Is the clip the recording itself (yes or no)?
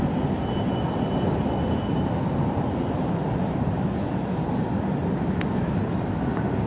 no